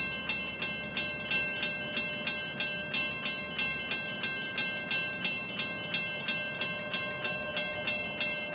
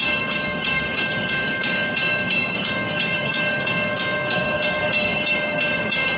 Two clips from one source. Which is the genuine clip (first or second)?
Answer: first